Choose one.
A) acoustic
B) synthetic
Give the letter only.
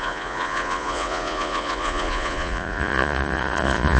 B